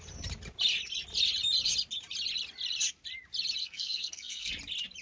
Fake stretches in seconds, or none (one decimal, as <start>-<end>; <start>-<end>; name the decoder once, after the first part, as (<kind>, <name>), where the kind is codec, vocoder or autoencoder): 3.6-4.5 (codec, SNAC)

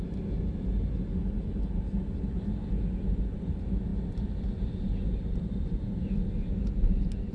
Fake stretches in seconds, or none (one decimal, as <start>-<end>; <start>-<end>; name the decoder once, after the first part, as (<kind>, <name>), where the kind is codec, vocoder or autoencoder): 2.6-3.5 (vocoder, BigVGAN v2); 3.9-6.0

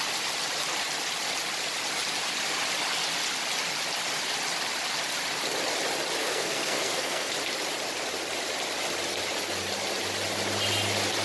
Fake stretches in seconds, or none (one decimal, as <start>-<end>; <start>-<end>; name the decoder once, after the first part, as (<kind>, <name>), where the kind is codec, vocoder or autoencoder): 6.2-7.3 (codec, SNAC)

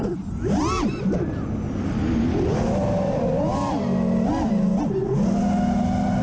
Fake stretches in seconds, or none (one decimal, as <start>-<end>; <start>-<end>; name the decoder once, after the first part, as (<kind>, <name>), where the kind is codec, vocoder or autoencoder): none

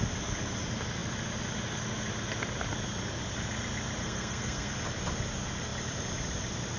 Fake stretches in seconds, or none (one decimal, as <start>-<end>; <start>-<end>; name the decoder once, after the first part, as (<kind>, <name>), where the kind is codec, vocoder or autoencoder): 4.0-4.7 (codec, SNAC)